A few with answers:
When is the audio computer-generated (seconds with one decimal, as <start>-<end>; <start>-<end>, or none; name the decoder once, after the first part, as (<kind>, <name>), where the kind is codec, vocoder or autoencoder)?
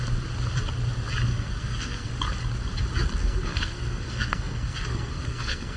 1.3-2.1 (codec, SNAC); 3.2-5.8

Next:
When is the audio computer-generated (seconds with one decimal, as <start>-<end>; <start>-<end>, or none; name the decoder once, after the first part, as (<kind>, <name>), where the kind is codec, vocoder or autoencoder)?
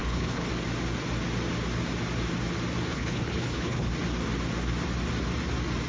0.0-0.5 (codec, HILCodec); 2.9-3.9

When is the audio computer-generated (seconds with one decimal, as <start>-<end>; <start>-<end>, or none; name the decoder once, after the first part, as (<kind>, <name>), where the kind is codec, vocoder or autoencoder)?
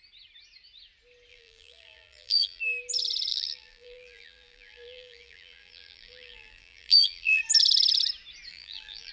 1.3-2.6 (vocoder, BigVGAN v2); 3.3-7.4; 8.5-9.1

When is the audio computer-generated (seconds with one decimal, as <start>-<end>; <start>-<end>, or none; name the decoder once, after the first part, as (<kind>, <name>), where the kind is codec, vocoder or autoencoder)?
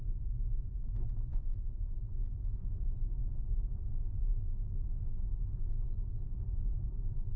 none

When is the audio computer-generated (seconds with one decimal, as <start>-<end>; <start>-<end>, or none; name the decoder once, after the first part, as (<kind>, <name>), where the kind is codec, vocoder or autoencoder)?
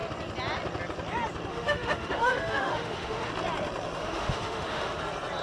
1.5-3.3 (autoencoder, DAC-VAE); 4.0-5.0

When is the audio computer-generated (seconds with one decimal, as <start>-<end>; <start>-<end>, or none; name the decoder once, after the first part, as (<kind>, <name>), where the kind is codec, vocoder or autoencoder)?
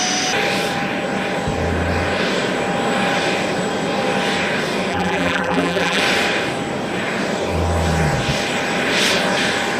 4.9-6.0 (vocoder, BigVGAN v2)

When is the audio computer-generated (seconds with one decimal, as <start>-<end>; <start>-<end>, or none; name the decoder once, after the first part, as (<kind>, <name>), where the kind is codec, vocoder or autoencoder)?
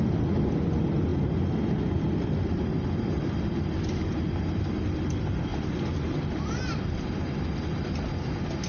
none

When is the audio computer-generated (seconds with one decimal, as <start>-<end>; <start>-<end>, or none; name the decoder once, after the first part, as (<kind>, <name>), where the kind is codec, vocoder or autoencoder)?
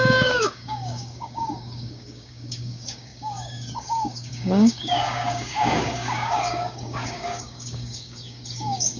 0.0-9.0 (codec, DAC)